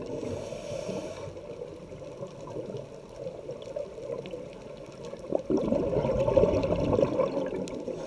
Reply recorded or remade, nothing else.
recorded